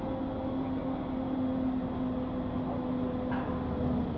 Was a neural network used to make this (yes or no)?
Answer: no